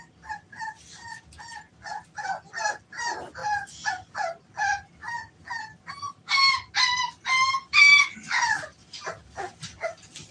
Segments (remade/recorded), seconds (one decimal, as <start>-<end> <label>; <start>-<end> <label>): 0.0-10.3 recorded